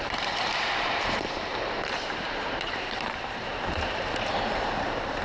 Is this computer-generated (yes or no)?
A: yes